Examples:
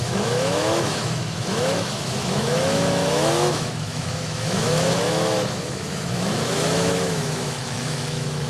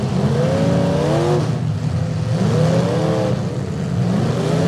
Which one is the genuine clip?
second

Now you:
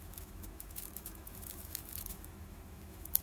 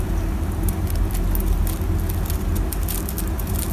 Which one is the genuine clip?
second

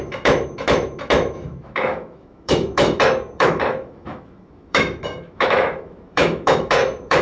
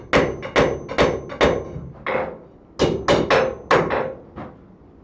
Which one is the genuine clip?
second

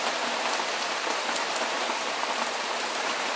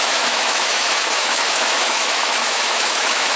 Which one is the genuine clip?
first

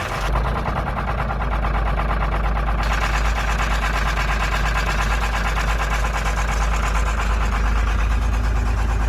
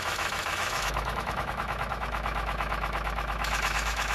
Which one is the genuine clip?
first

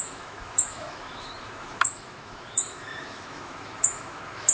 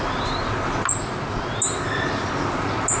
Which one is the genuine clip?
second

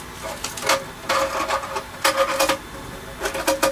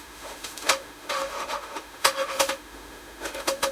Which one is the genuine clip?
first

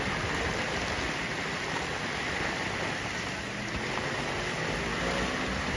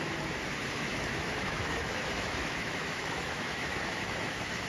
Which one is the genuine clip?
first